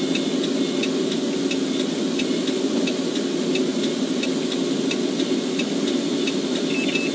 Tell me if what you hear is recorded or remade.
recorded